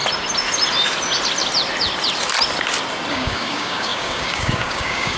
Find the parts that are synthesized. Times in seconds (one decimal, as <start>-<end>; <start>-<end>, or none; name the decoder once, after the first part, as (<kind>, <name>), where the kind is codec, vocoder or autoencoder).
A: 3.1-5.2 (codec, DAC)